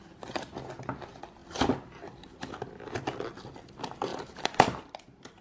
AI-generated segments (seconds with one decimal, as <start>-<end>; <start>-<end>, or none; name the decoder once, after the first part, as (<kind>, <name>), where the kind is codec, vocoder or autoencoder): 1.4-2.3 (vocoder, BigVGAN v2); 4.1-4.8